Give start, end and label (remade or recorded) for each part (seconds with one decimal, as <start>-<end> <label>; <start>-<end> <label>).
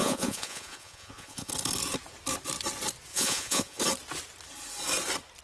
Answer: 0.0-1.5 remade; 1.5-3.1 recorded; 3.1-3.8 remade; 3.8-5.4 recorded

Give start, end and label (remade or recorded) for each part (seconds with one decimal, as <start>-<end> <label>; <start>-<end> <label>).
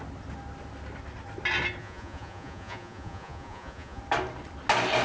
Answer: 0.0-1.8 recorded; 1.8-4.0 remade; 4.0-5.0 recorded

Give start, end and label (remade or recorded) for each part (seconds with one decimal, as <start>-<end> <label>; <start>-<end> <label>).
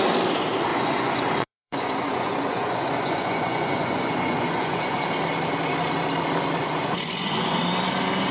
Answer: 0.0-0.7 recorded; 0.7-5.1 remade; 5.1-6.6 recorded; 6.6-7.6 remade; 7.6-8.3 recorded